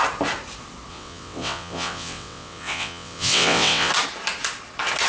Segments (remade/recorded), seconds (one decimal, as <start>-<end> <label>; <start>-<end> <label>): 0.0-0.9 recorded; 0.9-3.9 remade; 3.9-5.1 recorded